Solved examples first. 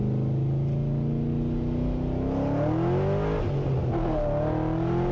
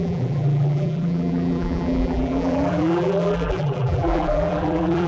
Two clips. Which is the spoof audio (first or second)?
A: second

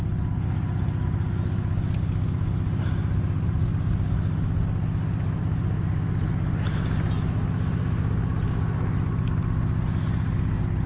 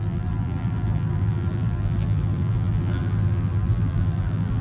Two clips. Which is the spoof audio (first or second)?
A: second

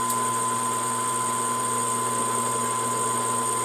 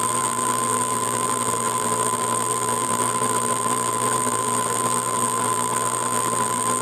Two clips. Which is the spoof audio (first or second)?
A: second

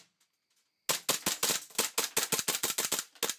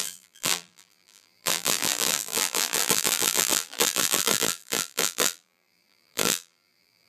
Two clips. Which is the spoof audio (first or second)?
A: second